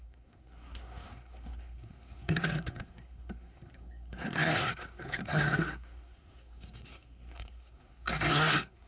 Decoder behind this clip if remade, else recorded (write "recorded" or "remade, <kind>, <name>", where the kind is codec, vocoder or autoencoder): remade, codec, SNAC